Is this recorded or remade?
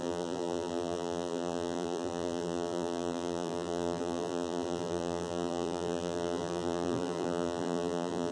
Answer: remade